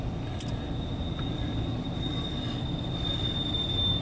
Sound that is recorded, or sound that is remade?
recorded